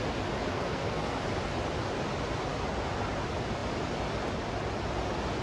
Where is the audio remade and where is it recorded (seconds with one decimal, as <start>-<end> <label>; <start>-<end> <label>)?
0.0-0.5 recorded; 0.5-1.2 remade; 1.2-5.4 recorded